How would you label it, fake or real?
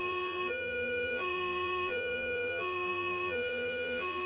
fake